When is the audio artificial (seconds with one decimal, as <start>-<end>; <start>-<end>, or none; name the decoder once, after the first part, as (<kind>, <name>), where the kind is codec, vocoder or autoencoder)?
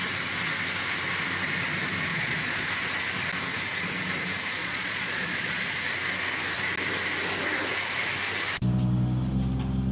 2.1-2.7 (vocoder, Vocos); 4.6-5.6